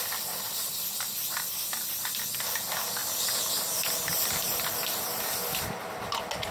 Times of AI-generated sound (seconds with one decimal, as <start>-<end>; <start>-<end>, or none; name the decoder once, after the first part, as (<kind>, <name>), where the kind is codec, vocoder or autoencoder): none